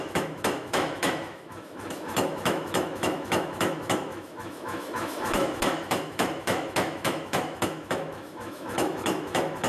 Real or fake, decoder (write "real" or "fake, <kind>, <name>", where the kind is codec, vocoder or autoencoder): fake, autoencoder, DAC-VAE